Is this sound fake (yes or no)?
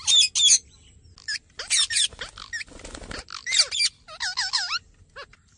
no